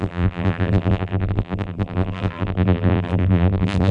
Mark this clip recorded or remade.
remade